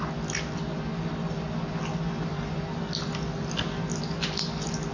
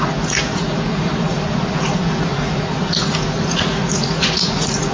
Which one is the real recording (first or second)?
first